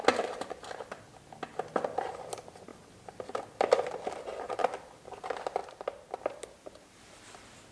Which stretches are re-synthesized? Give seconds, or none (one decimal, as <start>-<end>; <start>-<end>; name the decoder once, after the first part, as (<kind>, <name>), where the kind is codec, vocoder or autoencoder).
2.7-3.4 (vocoder, BigVGAN v2)